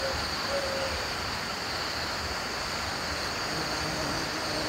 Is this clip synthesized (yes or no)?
no